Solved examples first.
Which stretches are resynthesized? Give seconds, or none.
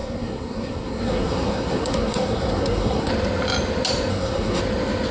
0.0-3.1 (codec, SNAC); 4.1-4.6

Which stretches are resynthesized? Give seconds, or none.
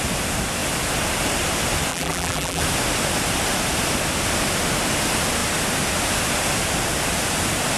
1.9-2.6 (vocoder, BigVGAN v2)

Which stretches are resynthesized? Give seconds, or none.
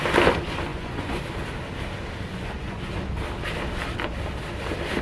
0.7-1.2 (vocoder, Vocos); 2.3-2.8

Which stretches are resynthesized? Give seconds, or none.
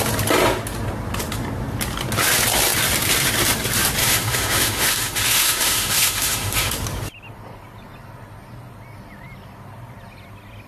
4.0-6.7 (autoencoder, DAC-VAE)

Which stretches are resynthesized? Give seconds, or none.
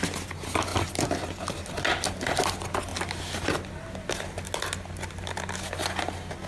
none